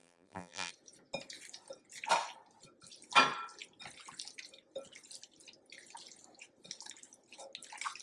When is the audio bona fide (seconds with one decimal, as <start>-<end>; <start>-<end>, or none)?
0.7-8.0